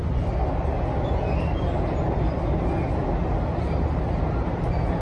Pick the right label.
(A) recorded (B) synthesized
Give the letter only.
A